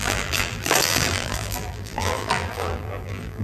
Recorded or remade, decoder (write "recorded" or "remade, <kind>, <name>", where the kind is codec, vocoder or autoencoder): remade, vocoder, BigVGAN v2